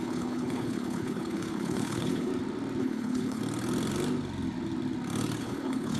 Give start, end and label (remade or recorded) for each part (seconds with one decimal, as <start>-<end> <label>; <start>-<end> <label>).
0.0-2.3 remade; 2.3-2.8 recorded; 2.8-3.4 remade; 3.4-5.4 recorded; 5.4-6.0 remade